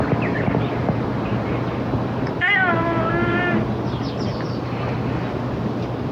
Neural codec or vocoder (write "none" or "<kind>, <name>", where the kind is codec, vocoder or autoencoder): none